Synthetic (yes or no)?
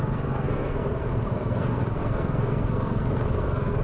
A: yes